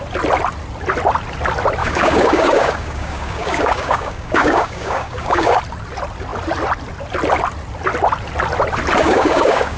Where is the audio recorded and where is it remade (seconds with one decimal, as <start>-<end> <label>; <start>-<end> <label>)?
0.0-1.8 recorded; 1.8-5.6 remade; 5.6-9.0 recorded; 9.0-9.8 remade